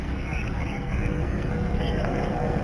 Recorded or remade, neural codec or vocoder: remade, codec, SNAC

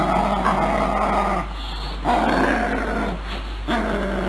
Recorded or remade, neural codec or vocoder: recorded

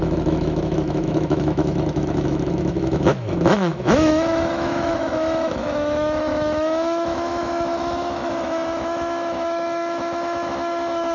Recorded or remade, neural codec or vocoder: remade, autoencoder, DAC-VAE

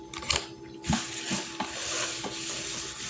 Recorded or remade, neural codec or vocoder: recorded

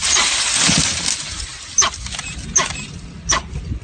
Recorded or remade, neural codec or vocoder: recorded